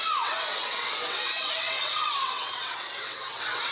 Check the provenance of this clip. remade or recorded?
remade